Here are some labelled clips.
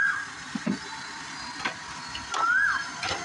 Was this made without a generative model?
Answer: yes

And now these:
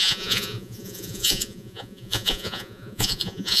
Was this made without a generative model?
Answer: no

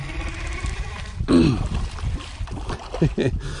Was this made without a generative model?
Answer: yes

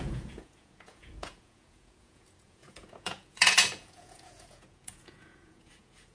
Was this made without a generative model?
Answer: no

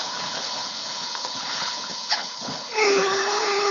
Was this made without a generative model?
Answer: no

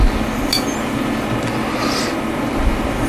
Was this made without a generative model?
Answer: yes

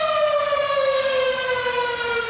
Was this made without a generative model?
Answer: yes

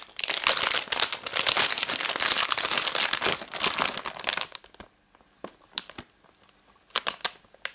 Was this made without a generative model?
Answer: yes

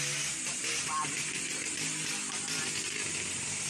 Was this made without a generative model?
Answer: yes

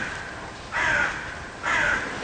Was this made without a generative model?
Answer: yes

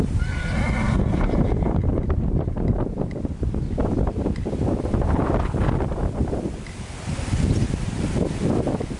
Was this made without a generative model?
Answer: yes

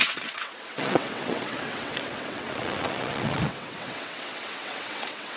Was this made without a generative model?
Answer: no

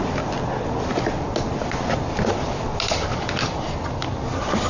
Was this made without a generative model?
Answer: yes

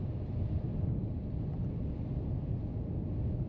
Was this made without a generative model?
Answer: yes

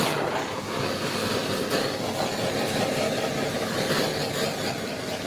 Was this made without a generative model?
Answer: yes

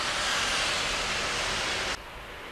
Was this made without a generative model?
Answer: yes